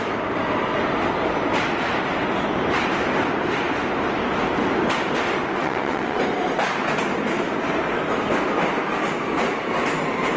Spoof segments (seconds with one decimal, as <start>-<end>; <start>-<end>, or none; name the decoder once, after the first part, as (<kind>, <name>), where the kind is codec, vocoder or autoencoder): 5.6-6.2 (vocoder, WaveNeXt)